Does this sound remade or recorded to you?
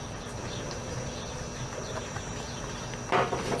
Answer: recorded